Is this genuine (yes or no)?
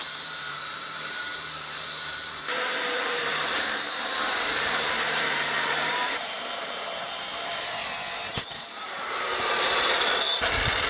no